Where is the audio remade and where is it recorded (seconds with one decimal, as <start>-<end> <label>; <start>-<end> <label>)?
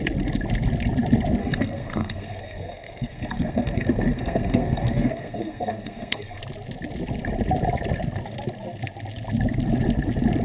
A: 0.0-1.4 recorded; 1.4-6.4 remade; 6.4-10.4 recorded